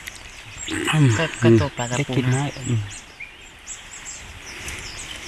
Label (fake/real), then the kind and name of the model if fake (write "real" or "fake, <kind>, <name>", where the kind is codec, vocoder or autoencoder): real